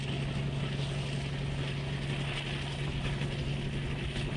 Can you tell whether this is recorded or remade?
recorded